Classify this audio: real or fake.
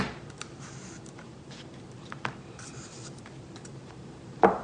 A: fake